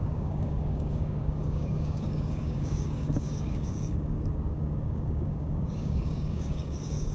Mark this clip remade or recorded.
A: remade